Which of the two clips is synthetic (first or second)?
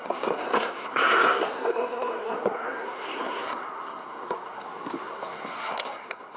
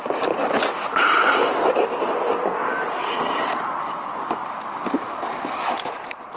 first